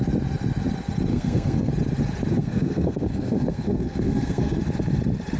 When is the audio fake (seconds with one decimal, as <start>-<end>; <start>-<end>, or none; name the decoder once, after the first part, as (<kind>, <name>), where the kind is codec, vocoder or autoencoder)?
1.1-1.7 (codec, SNAC); 2.3-4.6